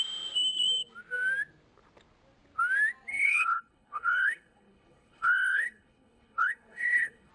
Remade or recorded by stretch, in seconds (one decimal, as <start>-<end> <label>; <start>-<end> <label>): 0.0-3.1 recorded; 3.1-7.3 remade